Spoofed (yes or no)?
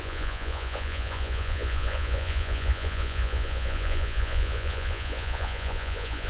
yes